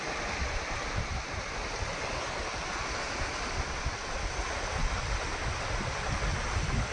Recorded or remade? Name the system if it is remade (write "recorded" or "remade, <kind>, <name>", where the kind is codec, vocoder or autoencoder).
recorded